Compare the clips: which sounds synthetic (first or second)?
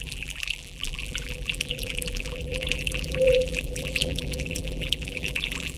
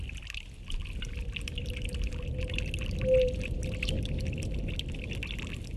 first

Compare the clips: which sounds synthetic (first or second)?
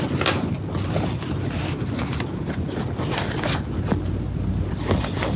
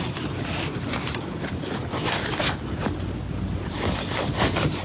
second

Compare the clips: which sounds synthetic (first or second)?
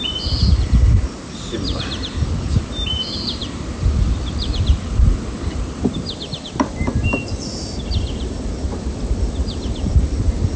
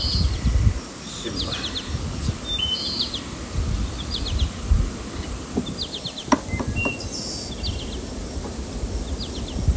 first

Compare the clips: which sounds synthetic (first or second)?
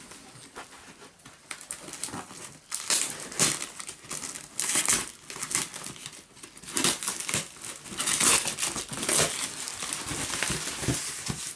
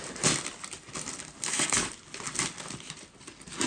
second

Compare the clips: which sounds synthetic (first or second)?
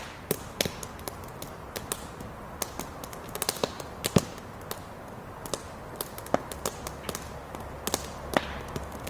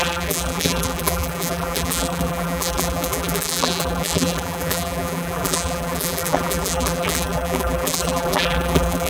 second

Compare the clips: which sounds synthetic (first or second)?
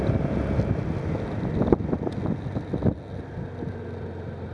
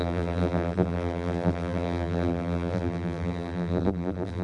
second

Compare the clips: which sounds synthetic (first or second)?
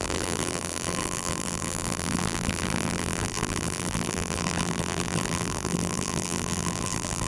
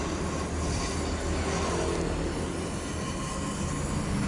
first